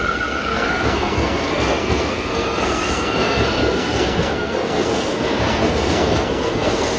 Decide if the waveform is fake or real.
fake